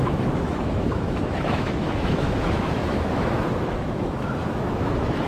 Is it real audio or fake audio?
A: fake